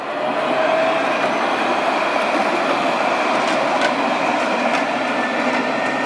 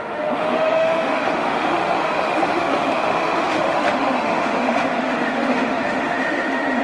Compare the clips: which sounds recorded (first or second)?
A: first